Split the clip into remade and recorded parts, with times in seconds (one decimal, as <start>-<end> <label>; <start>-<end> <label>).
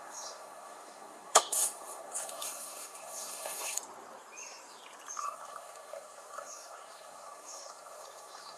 0.0-3.8 remade; 3.8-5.2 recorded; 5.2-8.6 remade